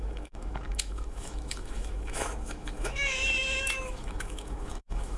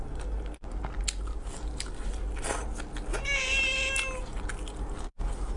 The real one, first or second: second